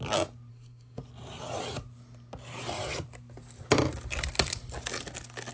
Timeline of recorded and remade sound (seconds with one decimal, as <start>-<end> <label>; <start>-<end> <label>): 0.0-0.5 recorded; 0.5-1.0 remade; 1.0-5.5 recorded